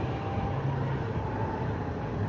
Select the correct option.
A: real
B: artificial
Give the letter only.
A